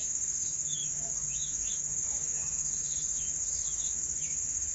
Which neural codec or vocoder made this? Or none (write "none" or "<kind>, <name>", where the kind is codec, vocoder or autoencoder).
autoencoder, DAC-VAE